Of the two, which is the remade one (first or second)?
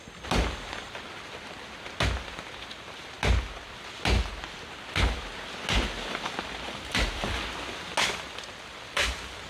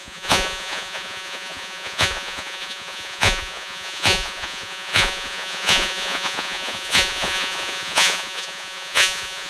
second